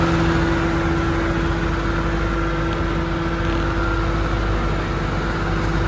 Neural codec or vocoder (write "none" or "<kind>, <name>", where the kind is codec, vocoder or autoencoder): none